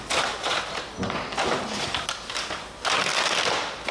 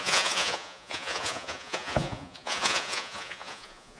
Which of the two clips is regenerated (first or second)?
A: second